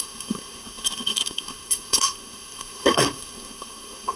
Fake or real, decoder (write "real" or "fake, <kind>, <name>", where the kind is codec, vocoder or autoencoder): fake, codec, SNAC